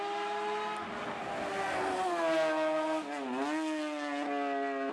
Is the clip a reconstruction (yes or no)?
no